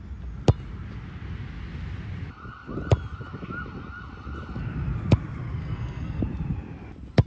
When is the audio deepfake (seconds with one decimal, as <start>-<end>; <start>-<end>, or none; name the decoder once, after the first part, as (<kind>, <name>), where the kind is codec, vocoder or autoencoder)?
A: 5.6-6.2 (codec, SNAC)